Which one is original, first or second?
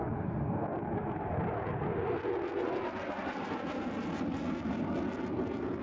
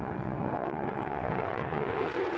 first